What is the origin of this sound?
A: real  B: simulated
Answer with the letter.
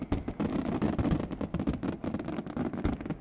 A